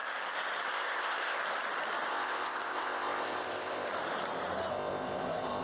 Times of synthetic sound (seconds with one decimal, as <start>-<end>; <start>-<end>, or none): 0.7-1.4; 2.1-3.9; 4.7-5.6